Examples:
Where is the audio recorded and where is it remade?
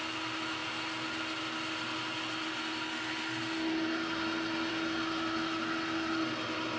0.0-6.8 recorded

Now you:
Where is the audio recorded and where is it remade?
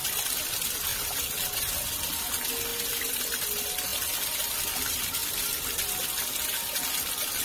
0.0-0.9 recorded; 0.9-1.9 remade; 1.9-2.7 recorded; 2.7-3.4 remade; 3.4-3.9 recorded; 3.9-4.6 remade; 4.6-7.4 recorded